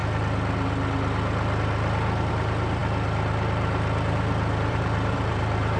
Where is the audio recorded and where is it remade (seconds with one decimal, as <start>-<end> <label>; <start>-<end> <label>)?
0.0-2.3 recorded; 2.3-2.8 remade; 2.8-4.7 recorded; 4.7-5.8 remade